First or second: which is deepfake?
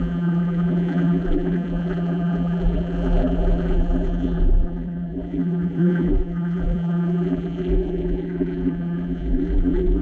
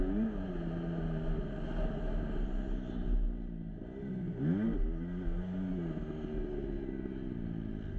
first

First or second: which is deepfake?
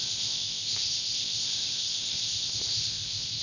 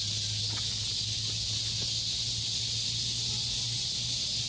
first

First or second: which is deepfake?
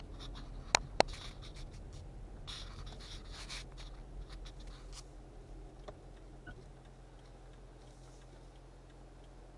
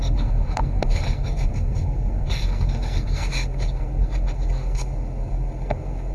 second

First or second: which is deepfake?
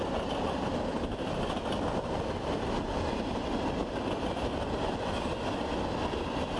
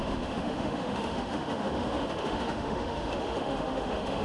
second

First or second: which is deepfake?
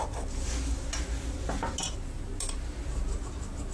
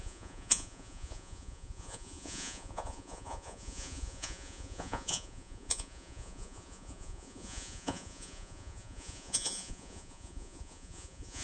second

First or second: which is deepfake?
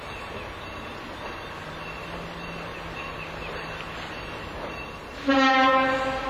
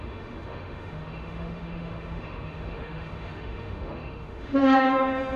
second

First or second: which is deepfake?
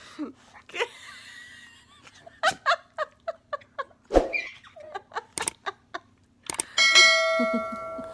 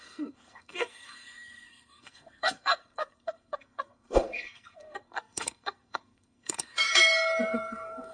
second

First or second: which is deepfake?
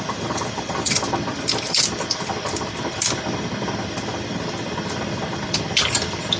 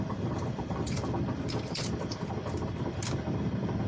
second